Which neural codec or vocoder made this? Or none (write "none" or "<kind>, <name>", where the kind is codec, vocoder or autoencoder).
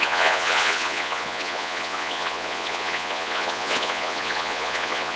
vocoder, Vocos